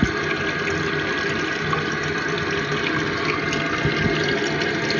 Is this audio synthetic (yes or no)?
no